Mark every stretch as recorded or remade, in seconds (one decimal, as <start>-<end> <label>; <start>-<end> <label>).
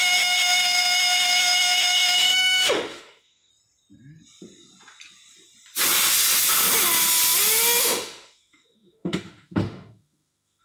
0.0-3.5 remade; 3.5-7.8 recorded; 7.8-10.6 remade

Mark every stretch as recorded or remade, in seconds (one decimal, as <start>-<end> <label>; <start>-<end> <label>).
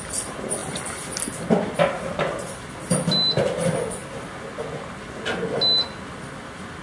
0.0-6.8 recorded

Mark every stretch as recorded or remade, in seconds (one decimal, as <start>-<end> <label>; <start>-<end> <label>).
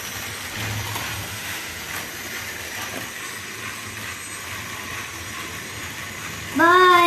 0.0-1.3 recorded; 1.3-1.8 remade; 1.8-7.1 recorded